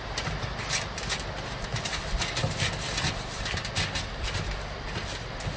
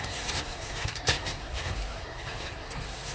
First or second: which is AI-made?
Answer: second